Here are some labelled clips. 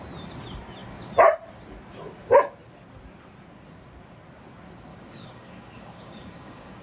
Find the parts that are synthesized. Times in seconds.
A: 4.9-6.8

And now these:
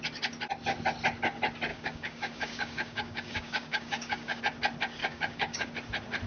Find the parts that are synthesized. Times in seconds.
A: 1.7-4.4; 5.0-5.7

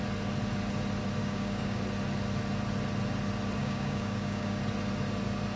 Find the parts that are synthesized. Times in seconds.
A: 1.2-1.8; 3.6-4.6